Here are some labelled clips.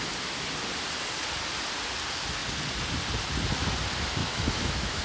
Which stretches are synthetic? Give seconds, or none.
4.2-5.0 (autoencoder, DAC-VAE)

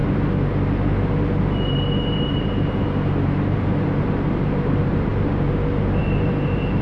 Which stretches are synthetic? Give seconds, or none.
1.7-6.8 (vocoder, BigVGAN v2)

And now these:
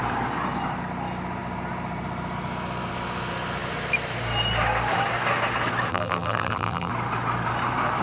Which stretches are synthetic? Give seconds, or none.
5.9-6.9 (vocoder, BigVGAN v2)

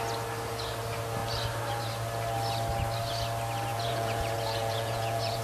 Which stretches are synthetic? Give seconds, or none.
3.7-5.4 (vocoder, Vocos)